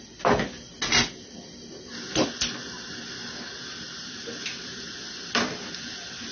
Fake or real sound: real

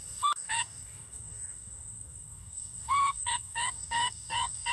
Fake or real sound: fake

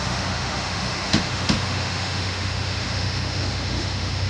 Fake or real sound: fake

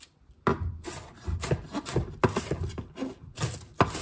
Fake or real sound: real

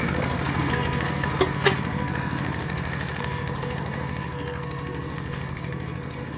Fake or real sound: fake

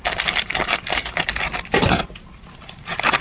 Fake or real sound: real